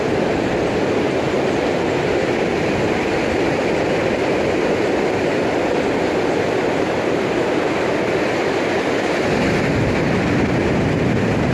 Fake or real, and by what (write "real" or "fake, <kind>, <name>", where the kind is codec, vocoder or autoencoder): real